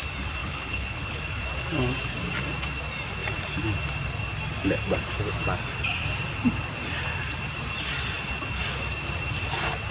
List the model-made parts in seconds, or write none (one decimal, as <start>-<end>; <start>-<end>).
0.4-1.2